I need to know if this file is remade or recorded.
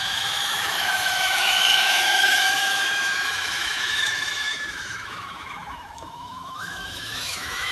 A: remade